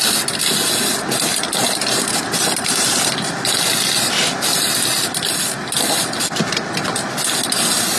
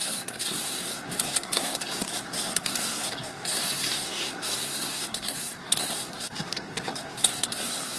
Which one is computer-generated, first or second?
second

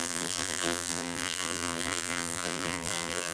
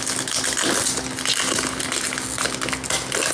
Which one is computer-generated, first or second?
first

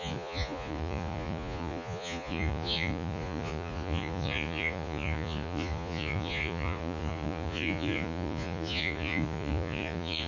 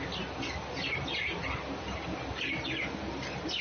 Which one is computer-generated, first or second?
first